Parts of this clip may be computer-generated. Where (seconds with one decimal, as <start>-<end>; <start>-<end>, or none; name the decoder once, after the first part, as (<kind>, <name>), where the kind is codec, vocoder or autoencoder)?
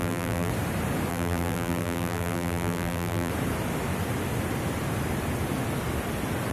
0.0-0.5 (vocoder, BigVGAN v2); 1.1-3.3